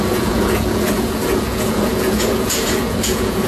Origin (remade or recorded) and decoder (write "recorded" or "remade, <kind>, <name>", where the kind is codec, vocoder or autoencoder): remade, vocoder, Vocos